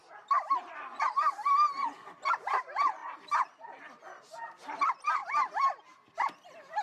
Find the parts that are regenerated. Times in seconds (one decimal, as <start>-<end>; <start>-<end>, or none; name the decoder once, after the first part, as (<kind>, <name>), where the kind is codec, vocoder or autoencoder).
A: 0.0-5.2 (vocoder, BigVGAN v2); 5.9-6.8